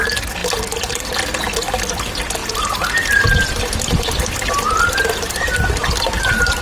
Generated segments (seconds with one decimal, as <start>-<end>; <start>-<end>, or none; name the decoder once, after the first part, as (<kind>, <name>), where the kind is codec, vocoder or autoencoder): none